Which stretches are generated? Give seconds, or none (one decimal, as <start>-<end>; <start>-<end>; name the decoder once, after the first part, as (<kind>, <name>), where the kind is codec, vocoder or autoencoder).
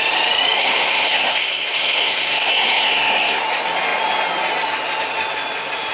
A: 0.6-3.4 (codec, SNAC)